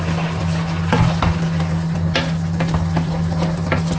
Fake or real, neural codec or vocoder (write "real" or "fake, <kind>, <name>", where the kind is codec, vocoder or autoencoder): real